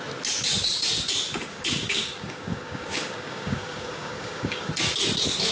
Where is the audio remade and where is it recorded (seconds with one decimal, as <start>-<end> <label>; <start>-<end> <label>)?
0.0-1.5 recorded; 1.5-4.7 remade; 4.7-5.5 recorded